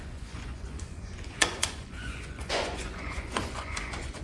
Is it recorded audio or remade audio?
remade